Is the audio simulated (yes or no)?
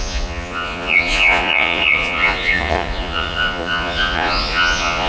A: yes